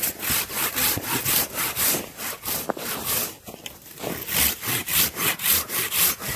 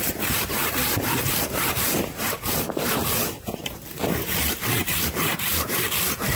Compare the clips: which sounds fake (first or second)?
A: second